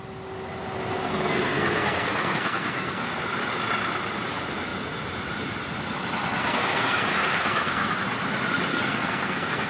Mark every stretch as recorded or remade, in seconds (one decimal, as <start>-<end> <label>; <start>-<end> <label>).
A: 0.0-1.0 recorded; 1.0-3.1 remade; 3.1-6.4 recorded; 6.4-7.9 remade; 7.9-8.7 recorded; 8.7-9.7 remade